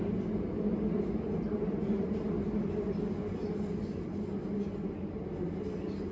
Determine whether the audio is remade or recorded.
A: recorded